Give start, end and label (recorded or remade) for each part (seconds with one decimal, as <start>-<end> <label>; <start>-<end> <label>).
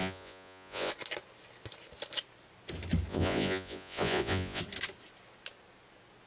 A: 0.0-0.9 remade; 0.9-3.1 recorded; 3.1-4.6 remade; 4.6-6.3 recorded